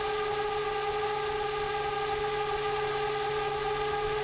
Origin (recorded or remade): recorded